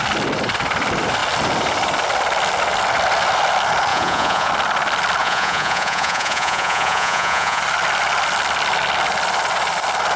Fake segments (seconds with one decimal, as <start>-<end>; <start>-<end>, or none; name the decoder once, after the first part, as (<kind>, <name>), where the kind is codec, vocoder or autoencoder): 3.9-4.5 (vocoder, Vocos); 5.2-7.6